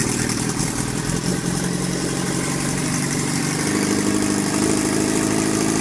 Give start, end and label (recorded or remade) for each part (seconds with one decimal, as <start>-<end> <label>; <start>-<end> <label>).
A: 0.0-0.6 remade; 0.6-1.3 recorded; 1.3-3.4 remade; 3.4-5.8 recorded